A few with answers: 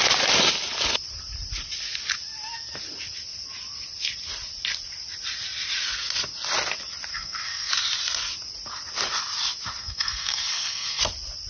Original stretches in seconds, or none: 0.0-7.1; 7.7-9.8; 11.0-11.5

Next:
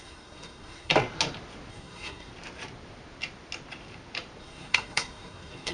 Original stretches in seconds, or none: 0.9-1.7; 2.3-4.4

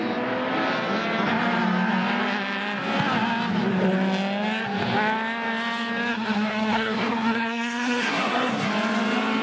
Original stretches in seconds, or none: 0.0-6.1; 8.7-9.4

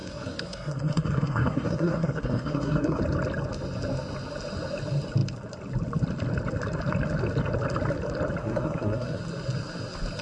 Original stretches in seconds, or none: 3.0-8.4; 9.2-10.2

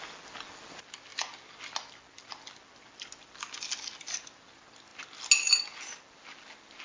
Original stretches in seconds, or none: 0.0-6.8

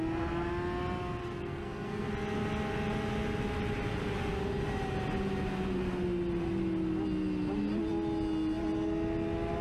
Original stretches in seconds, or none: 0.0-1.2; 2.1-9.6

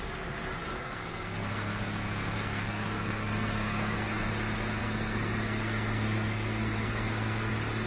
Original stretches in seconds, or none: 0.0-0.7; 4.3-4.8; 7.5-7.9

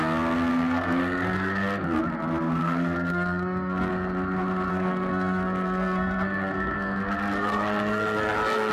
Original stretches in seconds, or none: 0.0-0.5; 2.0-2.6; 3.9-4.7